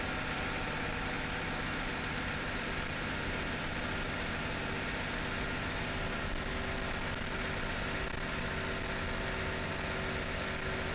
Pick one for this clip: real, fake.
real